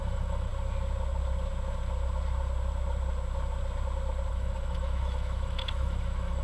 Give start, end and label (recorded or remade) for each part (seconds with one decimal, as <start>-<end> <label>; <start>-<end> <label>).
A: 0.0-0.5 remade; 0.5-4.3 recorded; 4.3-6.4 remade